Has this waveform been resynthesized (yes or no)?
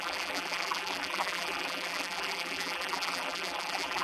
yes